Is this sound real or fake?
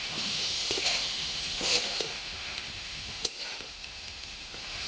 fake